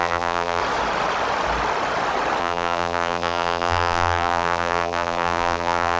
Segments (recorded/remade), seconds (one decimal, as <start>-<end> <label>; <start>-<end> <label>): 0.0-0.6 remade; 0.6-2.4 recorded; 2.4-6.0 remade